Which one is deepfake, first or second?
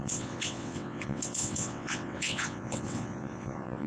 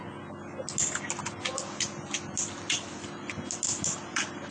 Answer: first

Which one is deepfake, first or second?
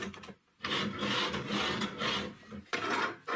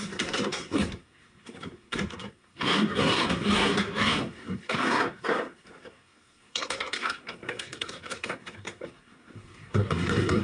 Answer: second